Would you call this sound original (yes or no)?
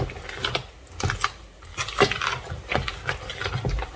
yes